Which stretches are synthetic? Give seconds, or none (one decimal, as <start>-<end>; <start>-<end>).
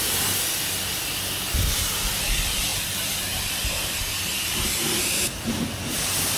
4.3-5.2